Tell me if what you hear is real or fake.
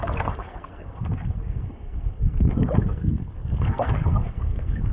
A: fake